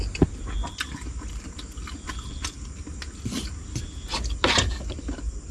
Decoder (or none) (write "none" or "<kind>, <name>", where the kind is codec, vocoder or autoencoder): none